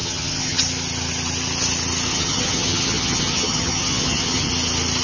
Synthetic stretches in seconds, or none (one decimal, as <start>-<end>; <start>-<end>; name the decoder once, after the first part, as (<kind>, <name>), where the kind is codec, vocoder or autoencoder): 0.0-0.6 (vocoder, HiFi-GAN); 2.1-4.5